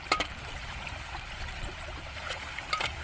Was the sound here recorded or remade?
remade